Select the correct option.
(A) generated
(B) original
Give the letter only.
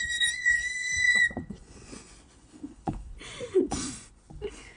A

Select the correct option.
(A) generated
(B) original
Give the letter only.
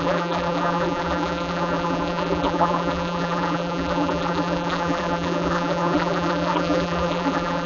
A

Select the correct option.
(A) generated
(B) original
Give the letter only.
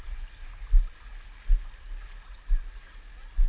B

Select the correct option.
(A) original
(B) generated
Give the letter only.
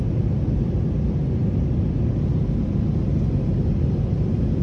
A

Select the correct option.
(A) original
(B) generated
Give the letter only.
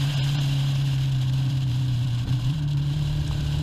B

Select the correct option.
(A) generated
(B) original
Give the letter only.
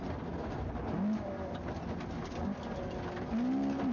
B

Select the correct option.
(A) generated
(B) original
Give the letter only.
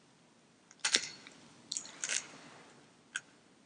B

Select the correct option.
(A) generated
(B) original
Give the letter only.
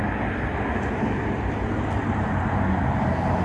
B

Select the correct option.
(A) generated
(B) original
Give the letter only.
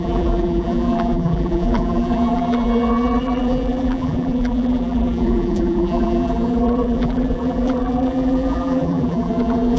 A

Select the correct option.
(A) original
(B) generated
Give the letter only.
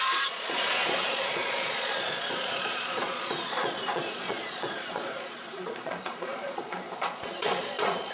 B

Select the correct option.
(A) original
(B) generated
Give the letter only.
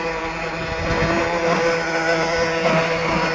A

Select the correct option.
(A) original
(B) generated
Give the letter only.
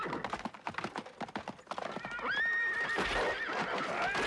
A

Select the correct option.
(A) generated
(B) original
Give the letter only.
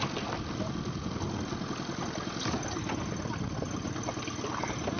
B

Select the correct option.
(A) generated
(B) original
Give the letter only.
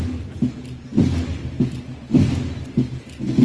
B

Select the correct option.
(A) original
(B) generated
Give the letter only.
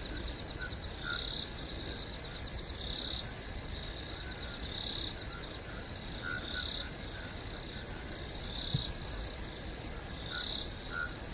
A